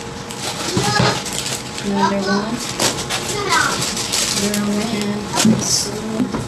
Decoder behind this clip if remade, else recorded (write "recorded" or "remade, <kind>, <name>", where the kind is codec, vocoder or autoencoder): recorded